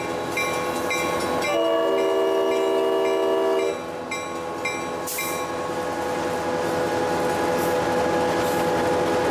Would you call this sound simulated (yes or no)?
no